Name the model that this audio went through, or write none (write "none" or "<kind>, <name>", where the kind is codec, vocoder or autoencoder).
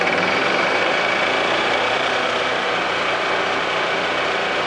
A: vocoder, BigVGAN v2